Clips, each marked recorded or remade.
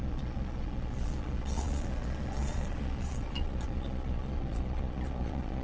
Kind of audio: remade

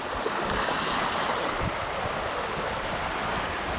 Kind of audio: recorded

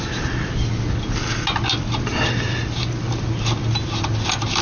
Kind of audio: recorded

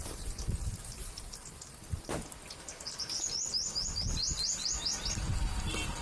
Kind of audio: recorded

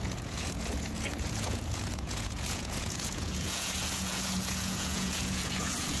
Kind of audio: remade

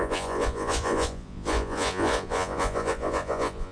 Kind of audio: remade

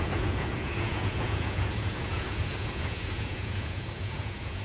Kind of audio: remade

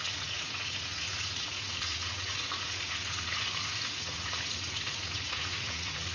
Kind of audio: remade